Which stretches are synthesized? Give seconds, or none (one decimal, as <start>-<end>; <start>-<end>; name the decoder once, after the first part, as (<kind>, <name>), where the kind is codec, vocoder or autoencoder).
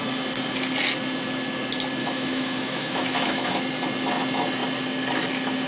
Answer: 2.0-3.6 (autoencoder, DAC-VAE)